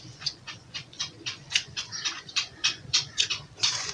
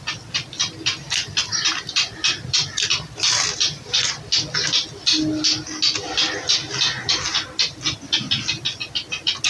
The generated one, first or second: first